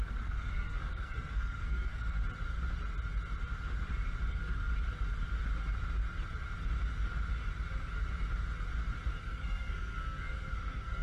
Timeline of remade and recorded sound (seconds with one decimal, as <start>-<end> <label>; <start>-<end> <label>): 0.0-2.2 remade; 2.2-4.3 recorded; 4.3-4.7 remade; 4.7-9.2 recorded; 9.2-11.0 remade